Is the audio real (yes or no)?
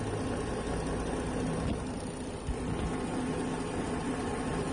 yes